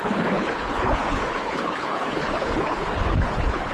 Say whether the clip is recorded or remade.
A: remade